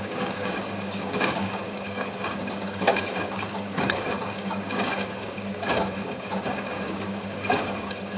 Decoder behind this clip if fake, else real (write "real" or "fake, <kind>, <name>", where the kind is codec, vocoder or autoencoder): fake, codec, DAC